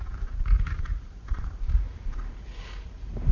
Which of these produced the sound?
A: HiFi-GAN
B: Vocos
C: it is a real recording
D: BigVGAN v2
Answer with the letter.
D